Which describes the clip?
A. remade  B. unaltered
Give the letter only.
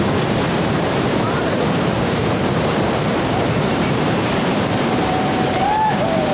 A